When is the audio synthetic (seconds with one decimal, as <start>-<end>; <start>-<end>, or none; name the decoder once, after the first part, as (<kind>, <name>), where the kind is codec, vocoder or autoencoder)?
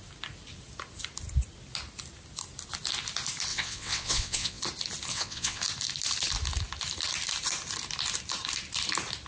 3.5-4.6 (vocoder, WaveNeXt); 5.1-5.6